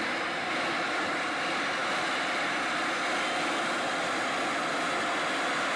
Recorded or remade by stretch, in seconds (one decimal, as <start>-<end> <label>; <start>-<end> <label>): 0.0-5.8 recorded